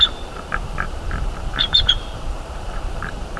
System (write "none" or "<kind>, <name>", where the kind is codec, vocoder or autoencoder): vocoder, BigVGAN v2